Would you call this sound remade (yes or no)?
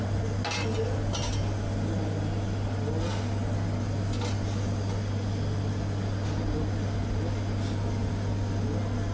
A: no